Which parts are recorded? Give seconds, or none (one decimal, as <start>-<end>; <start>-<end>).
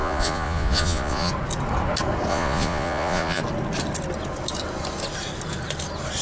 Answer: 1.3-2.3; 3.4-6.2